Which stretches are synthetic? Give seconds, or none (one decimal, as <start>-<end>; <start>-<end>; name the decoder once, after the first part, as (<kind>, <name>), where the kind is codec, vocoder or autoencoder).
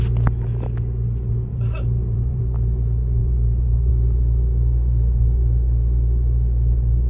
1.5-2.4 (vocoder, BigVGAN v2); 3.2-3.9